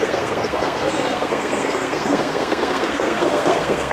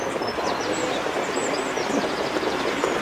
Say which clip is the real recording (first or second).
second